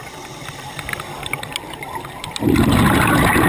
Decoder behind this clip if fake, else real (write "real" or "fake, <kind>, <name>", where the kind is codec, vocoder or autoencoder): real